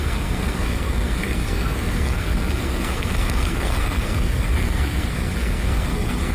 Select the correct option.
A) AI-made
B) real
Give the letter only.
A